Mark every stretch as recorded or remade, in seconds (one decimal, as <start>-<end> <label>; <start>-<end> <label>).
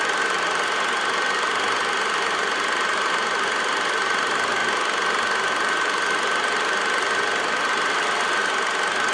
0.0-9.1 recorded